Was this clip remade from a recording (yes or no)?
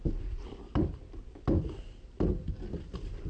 no